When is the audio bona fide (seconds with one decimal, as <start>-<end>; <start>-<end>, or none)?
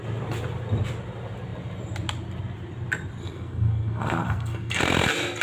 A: 0.0-3.2; 4.8-5.4